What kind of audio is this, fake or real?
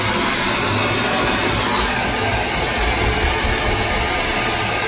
real